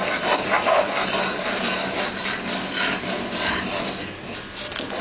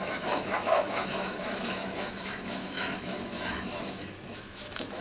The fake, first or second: second